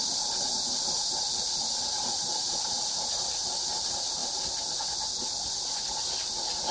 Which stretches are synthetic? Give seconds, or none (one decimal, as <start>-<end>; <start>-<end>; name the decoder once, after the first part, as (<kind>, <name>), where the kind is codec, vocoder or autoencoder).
none